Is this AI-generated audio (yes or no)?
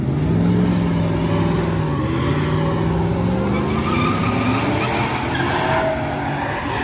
no